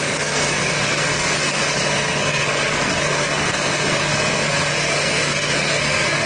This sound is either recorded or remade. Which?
remade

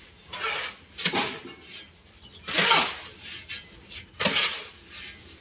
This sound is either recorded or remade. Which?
recorded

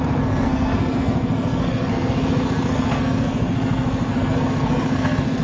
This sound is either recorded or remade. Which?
remade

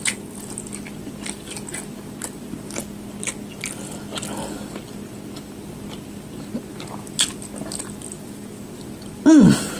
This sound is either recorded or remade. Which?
recorded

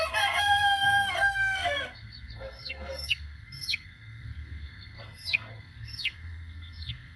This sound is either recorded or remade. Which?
remade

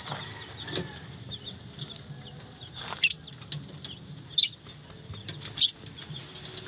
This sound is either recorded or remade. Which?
recorded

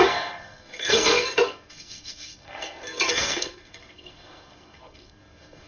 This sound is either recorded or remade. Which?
remade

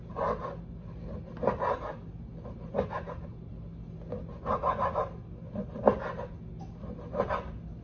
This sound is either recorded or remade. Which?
recorded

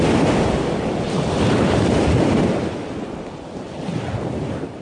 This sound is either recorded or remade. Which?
recorded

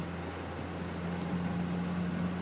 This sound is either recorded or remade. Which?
recorded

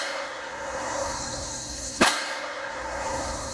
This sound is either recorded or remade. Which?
remade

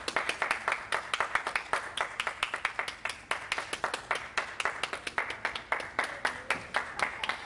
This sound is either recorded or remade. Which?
recorded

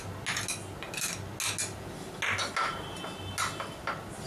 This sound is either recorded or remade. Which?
recorded